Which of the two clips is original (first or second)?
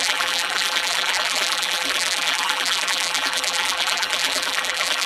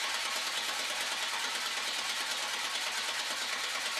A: second